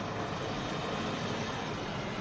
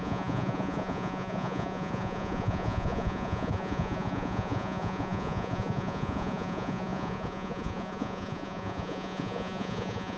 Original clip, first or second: first